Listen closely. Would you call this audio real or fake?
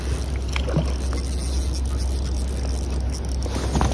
real